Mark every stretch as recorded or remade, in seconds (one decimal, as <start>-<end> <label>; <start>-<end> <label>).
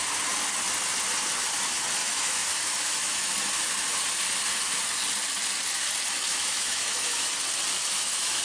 0.0-2.0 recorded; 2.0-3.3 remade; 3.3-6.3 recorded; 6.3-7.3 remade; 7.3-7.7 recorded; 7.7-8.4 remade